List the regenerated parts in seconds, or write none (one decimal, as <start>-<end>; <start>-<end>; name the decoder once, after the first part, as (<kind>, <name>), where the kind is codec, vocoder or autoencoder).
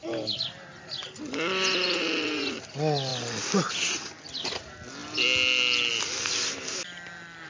none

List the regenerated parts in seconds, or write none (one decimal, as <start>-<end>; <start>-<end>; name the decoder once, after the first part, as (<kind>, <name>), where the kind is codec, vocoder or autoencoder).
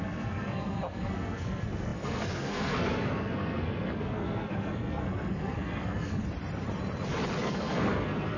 0.0-6.2 (codec, SNAC); 7.4-8.4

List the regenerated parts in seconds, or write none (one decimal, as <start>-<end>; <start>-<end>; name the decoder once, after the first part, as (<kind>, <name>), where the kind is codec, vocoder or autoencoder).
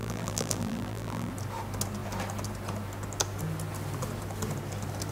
0.0-1.3 (vocoder, BigVGAN v2)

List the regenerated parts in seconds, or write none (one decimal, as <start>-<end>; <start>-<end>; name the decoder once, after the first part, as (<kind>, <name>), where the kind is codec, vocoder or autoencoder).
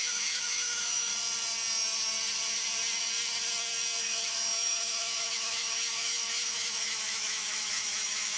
0.0-1.1 (autoencoder, DAC-VAE); 4.0-8.4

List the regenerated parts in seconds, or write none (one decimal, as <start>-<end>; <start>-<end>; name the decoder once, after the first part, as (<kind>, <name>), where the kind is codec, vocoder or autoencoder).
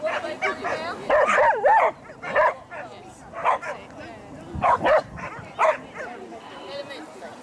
0.0-2.9 (vocoder, BigVGAN v2); 4.4-7.4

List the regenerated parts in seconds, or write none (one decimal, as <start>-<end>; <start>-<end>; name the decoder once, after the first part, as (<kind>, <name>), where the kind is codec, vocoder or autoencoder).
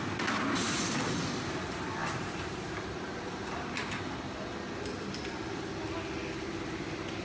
2.0-3.9 (vocoder, BigVGAN v2)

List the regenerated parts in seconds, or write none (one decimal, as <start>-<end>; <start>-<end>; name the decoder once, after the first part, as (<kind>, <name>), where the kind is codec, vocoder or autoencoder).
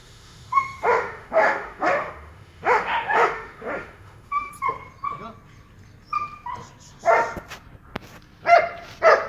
0.0-4.5 (autoencoder, DAC-VAE)